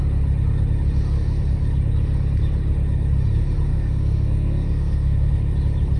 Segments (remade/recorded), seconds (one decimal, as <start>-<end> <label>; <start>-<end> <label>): 0.0-3.7 recorded; 3.7-5.3 remade; 5.3-6.0 recorded